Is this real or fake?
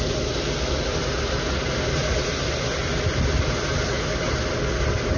real